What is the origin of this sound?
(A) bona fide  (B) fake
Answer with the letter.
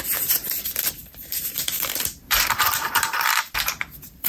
B